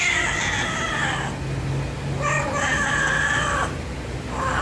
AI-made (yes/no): no